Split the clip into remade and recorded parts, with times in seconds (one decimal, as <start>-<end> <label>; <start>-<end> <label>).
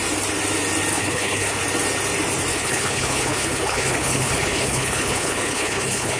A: 0.0-0.9 recorded; 0.9-1.6 remade; 1.6-2.5 recorded; 2.5-6.2 remade